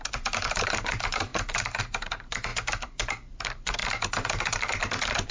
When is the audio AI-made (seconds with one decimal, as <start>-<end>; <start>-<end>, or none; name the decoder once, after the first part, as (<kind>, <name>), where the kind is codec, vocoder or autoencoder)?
0.0-2.5 (vocoder, BigVGAN v2); 3.3-3.8

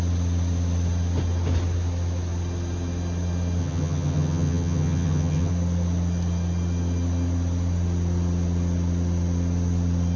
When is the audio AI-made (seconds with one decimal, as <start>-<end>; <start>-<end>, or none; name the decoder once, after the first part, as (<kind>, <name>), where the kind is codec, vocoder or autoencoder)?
3.6-5.5 (vocoder, HiFi-GAN)

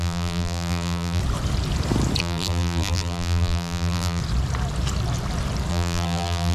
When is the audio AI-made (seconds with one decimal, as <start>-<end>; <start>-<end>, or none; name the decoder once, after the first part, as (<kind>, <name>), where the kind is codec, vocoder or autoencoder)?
0.0-1.2 (vocoder, BigVGAN v2); 2.2-4.2; 5.7-6.5

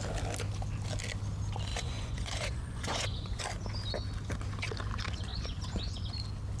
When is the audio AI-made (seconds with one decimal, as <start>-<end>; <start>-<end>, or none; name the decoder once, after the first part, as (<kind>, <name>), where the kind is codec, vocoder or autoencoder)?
1.7-3.4 (vocoder, Vocos); 5.3-6.1

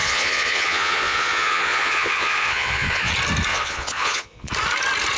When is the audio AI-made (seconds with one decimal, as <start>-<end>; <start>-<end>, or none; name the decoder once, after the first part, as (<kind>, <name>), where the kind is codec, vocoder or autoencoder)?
0.0-3.1 (vocoder, Vocos); 3.5-4.5